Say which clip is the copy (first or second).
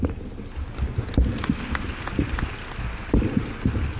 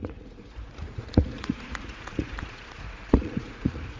second